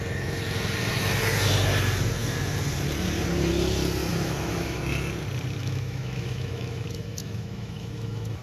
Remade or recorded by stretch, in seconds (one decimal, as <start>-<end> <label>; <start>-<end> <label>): 0.0-4.1 recorded; 4.1-4.8 remade; 4.8-5.6 recorded; 5.6-8.4 remade